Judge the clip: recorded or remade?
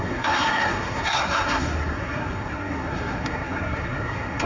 remade